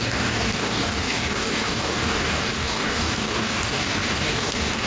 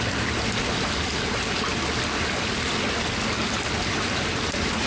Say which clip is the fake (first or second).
first